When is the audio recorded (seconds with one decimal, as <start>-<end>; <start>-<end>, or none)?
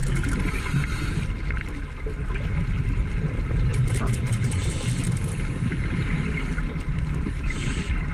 0.0-3.7; 4.6-8.1